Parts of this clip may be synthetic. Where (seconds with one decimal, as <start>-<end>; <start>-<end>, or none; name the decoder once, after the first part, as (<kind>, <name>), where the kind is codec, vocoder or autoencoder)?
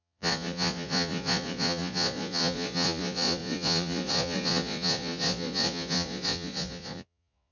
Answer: 0.0-7.5 (vocoder, Vocos)